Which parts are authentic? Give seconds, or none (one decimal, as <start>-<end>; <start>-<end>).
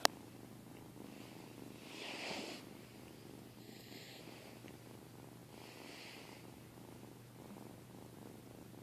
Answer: 0.0-3.6; 4.2-8.8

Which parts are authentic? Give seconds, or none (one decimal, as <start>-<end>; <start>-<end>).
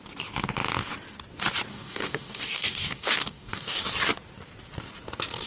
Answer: 0.0-1.7; 3.8-5.5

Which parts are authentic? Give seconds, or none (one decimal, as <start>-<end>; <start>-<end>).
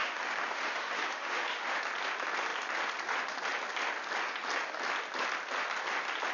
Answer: 1.8-6.3